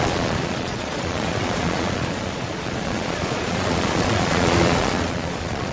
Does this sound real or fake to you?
fake